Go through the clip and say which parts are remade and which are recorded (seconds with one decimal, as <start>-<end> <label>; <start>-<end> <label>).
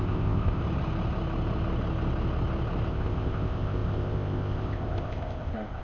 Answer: 0.0-0.6 remade; 0.6-2.9 recorded; 2.9-5.8 remade